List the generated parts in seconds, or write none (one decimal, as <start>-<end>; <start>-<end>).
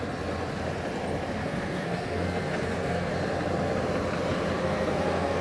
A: 1.4-3.1; 4.6-5.4